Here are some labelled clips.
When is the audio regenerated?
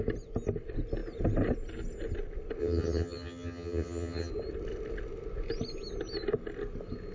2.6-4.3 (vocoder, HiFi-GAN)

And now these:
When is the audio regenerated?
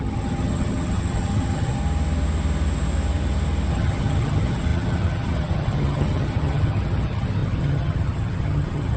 0.0-1.8 (vocoder, HiFi-GAN); 3.7-9.0